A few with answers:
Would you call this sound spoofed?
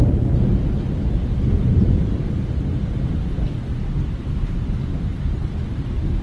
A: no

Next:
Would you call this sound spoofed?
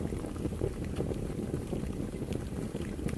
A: yes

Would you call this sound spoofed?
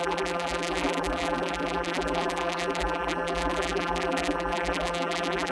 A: yes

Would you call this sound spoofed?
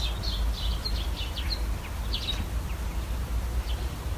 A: no